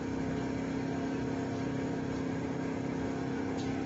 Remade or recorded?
recorded